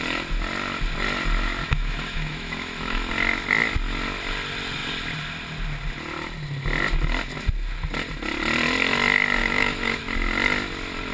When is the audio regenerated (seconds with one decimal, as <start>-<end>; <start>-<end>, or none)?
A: 1.6-3.1; 9.4-10.0